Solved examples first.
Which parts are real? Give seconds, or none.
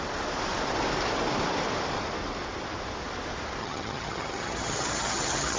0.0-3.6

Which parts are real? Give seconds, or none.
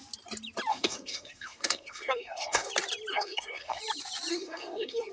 0.0-0.7; 2.7-3.1; 3.8-4.3